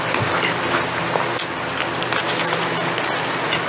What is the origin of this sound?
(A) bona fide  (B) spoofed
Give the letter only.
A